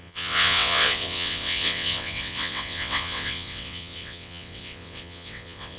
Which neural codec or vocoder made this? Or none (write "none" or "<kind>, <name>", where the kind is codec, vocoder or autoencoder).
vocoder, WaveNeXt